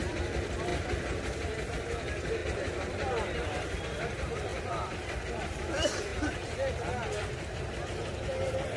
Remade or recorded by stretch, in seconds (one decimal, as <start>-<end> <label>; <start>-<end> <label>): 0.0-0.7 remade; 0.7-1.7 recorded; 1.7-8.8 remade